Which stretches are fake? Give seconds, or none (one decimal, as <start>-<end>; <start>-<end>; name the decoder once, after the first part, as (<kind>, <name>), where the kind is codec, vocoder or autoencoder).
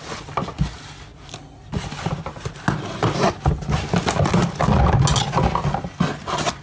none